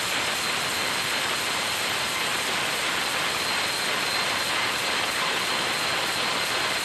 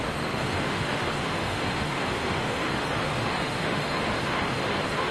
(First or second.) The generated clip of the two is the second